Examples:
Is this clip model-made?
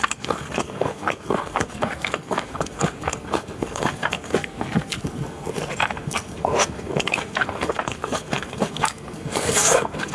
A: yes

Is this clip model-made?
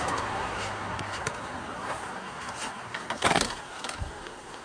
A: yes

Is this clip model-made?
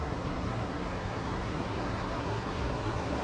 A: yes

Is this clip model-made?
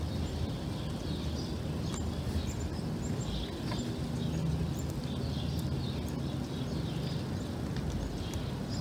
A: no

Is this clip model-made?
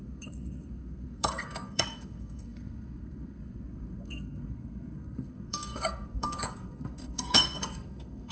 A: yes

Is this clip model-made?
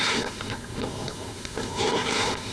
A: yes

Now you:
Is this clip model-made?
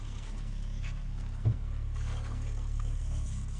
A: yes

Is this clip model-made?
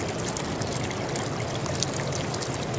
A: no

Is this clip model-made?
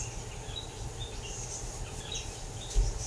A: no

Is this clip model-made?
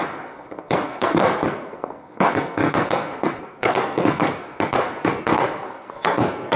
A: yes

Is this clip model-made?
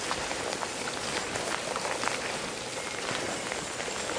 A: no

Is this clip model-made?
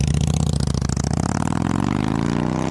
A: no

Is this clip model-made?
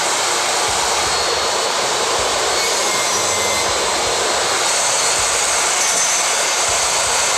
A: no